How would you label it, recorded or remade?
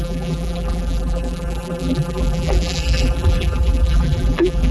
remade